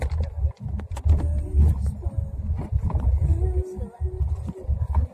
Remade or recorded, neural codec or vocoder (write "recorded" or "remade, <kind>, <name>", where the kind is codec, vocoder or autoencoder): recorded